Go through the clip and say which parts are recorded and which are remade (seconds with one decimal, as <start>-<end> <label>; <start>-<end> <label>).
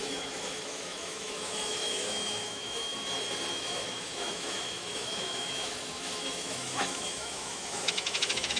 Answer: 0.0-2.9 remade; 2.9-3.5 recorded; 3.5-8.6 remade